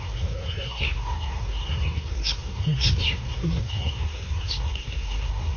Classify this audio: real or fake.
fake